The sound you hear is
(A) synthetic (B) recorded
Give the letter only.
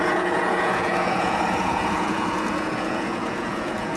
A